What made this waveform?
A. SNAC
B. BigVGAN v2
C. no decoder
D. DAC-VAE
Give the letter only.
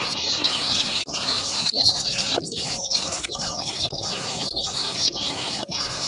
A